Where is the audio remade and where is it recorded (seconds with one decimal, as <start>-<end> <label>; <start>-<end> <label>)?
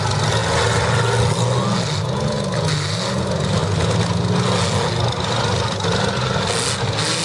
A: 0.0-7.2 recorded